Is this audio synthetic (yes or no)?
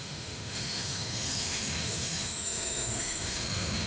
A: yes